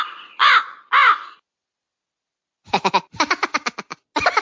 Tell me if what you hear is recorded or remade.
recorded